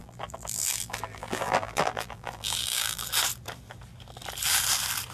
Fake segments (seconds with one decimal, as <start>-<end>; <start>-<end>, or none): 0.0-3.1